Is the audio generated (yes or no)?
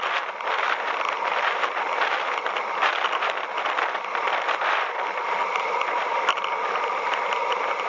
yes